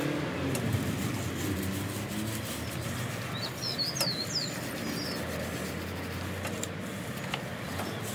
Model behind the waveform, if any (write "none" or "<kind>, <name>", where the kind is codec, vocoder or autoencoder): none